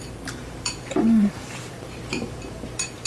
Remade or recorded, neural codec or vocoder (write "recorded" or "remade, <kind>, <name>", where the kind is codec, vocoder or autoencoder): remade, vocoder, BigVGAN v2